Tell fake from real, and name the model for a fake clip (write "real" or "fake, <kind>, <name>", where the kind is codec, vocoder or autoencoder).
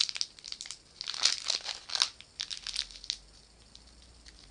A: real